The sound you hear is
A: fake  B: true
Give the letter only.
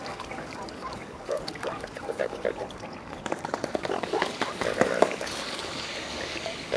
A